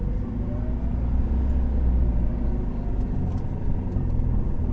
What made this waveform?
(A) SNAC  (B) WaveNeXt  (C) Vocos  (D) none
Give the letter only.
D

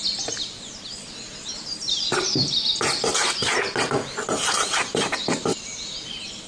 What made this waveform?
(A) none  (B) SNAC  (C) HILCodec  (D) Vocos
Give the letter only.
A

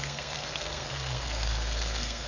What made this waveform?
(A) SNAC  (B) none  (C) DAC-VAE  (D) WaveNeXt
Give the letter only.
A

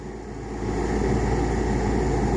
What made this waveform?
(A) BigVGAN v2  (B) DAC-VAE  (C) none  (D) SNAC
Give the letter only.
C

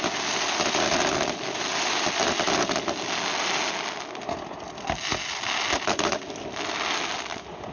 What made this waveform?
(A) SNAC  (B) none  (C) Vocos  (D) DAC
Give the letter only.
B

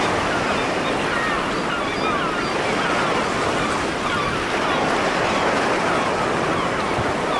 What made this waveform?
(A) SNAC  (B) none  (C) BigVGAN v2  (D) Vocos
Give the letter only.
B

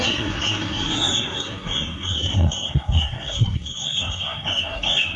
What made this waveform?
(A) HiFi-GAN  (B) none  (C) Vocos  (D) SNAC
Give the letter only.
D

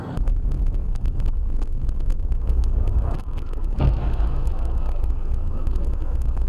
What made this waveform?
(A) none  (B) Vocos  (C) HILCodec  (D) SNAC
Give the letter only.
D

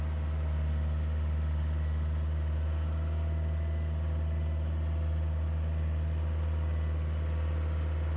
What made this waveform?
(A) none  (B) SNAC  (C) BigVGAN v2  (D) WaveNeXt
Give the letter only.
A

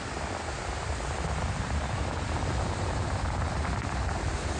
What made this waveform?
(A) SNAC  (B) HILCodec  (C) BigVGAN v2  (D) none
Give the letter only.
D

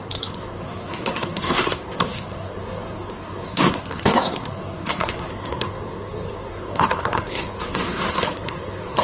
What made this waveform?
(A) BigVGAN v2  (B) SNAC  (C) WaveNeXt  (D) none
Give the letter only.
B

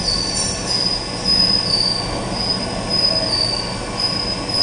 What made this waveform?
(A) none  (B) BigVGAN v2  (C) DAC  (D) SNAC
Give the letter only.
A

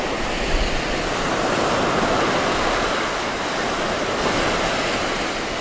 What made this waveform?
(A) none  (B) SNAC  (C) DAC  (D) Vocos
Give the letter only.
A